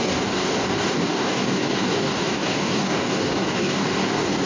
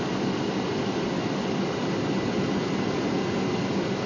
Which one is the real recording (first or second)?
second